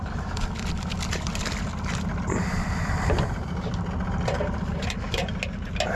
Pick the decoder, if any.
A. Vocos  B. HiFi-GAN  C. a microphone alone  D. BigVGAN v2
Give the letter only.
C